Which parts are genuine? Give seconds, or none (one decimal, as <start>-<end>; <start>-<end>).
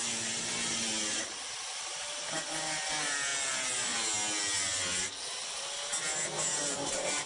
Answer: 0.0-7.3